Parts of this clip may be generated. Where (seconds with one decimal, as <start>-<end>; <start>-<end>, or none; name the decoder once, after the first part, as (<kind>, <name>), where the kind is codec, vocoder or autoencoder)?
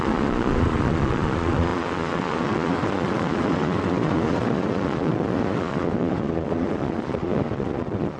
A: 0.0-8.2 (vocoder, Vocos)